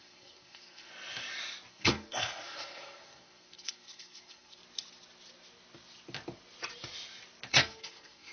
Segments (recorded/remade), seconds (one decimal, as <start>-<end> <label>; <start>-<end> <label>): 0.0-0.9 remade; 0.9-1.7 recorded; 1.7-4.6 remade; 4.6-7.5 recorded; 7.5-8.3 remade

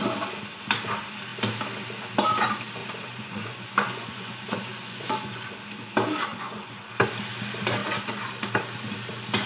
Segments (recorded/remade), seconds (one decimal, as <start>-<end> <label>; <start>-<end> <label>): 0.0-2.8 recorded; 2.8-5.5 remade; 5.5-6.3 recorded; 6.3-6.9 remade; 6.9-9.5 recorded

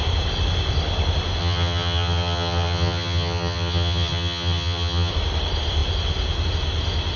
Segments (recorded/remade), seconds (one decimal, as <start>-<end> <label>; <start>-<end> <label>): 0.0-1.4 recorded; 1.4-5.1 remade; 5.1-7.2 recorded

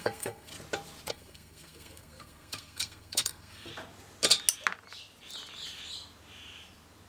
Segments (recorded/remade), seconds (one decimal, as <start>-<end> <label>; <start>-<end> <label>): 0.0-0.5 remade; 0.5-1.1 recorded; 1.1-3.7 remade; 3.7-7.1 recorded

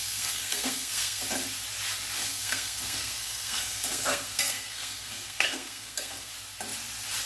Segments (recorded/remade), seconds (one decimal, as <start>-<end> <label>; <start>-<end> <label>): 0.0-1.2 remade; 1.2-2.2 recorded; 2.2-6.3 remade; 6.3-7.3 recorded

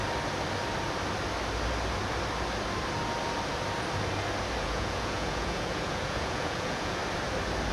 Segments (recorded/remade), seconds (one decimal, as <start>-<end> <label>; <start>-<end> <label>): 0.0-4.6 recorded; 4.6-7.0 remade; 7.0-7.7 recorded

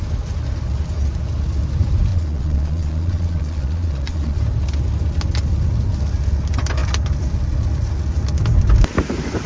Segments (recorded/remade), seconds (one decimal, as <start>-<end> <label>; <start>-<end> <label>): 0.0-2.1 recorded; 2.1-4.4 remade; 4.4-9.5 recorded

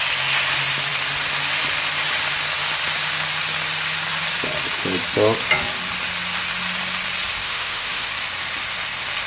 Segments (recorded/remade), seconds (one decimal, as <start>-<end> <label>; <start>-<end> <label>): 0.0-7.4 recorded; 7.4-8.1 remade; 8.1-9.3 recorded